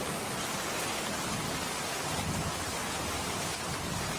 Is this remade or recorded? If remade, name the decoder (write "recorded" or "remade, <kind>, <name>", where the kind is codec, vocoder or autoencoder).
recorded